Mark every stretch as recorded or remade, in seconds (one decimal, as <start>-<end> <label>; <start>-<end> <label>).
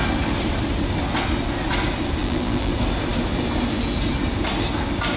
0.0-2.2 recorded; 2.2-2.7 remade; 2.7-5.2 recorded